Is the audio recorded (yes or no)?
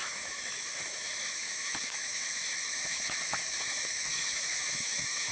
no